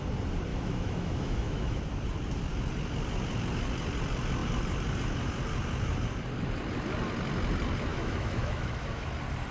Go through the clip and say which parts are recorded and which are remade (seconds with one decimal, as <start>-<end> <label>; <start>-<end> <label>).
0.0-0.5 recorded; 0.5-1.8 remade; 1.8-7.9 recorded; 7.9-9.1 remade; 9.1-9.5 recorded

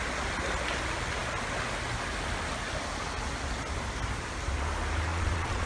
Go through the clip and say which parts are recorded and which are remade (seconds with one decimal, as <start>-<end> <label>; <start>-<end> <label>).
0.0-5.1 recorded; 5.1-5.7 remade

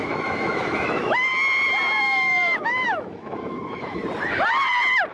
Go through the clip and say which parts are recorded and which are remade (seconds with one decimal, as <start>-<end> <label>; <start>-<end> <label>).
0.0-1.3 remade; 1.3-2.0 recorded; 2.0-4.0 remade; 4.0-5.1 recorded